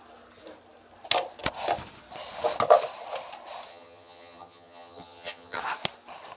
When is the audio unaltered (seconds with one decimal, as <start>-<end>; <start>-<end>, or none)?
0.0-3.7; 5.6-6.4